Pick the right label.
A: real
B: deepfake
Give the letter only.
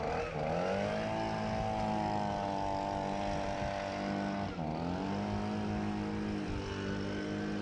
A